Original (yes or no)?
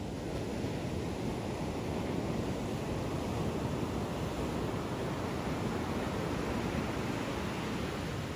yes